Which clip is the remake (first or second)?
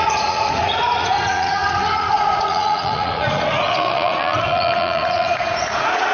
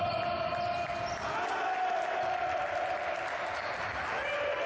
first